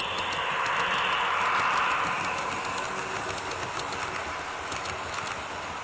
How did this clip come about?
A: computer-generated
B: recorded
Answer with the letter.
B